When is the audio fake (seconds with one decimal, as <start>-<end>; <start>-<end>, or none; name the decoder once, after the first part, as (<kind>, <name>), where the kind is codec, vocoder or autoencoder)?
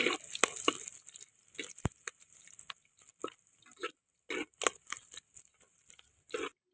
none